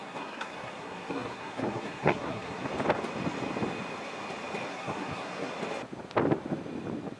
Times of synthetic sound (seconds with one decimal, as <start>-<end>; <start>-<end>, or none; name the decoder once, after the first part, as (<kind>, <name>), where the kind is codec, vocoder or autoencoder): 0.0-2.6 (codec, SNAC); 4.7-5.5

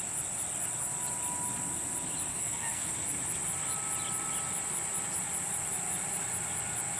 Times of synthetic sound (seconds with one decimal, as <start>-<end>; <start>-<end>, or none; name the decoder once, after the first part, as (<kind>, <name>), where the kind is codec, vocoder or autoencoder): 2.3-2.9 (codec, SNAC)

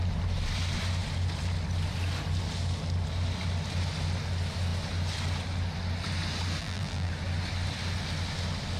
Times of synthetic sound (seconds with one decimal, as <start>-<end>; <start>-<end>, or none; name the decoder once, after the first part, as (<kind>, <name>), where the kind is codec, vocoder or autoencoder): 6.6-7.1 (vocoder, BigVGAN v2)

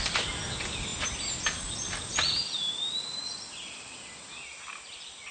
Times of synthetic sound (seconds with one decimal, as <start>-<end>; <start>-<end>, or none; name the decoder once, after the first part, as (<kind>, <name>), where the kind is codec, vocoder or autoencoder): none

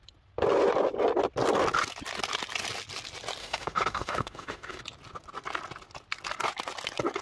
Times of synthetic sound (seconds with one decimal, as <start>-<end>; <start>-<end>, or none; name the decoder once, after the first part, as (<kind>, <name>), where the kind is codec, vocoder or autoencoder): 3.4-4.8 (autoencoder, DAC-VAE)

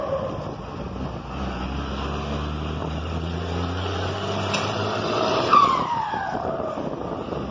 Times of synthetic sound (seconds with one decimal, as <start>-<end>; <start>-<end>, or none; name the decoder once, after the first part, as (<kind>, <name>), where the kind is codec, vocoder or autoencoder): 2.8-6.7 (vocoder, BigVGAN v2)

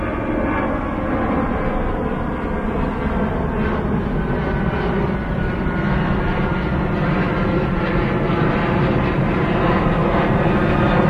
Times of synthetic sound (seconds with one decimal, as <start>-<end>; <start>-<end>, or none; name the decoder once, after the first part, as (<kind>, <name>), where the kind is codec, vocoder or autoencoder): none